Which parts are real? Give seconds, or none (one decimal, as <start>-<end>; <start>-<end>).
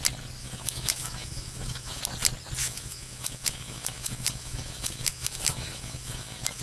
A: 0.0-0.4; 2.0-2.6